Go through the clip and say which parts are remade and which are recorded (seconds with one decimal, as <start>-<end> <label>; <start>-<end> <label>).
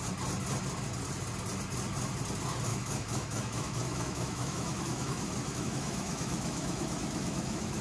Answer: 0.0-2.7 recorded; 2.7-7.8 remade